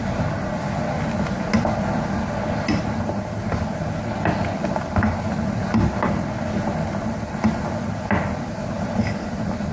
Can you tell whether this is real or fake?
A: real